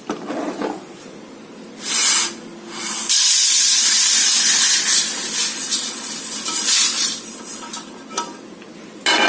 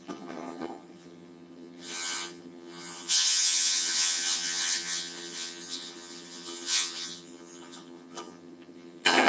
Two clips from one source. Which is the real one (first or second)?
first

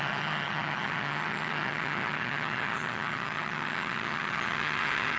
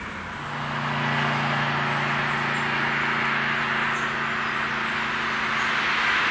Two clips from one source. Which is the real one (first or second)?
second